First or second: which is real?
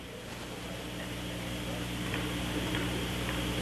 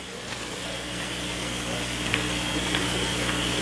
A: first